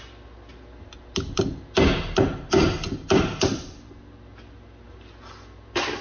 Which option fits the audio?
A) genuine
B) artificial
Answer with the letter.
A